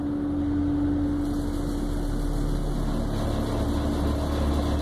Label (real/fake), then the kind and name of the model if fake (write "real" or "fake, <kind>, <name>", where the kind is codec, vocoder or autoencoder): real